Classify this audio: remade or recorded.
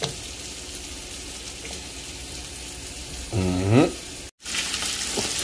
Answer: recorded